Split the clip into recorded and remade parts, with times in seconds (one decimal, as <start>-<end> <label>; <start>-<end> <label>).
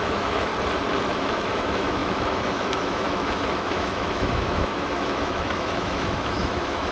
0.0-0.5 remade; 0.5-1.1 recorded; 1.1-6.9 remade